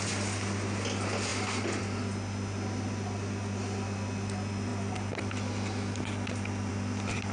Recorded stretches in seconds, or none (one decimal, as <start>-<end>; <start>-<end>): 0.0-7.3